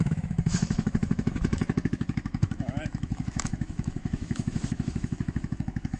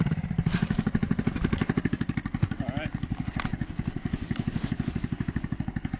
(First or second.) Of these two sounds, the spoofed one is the first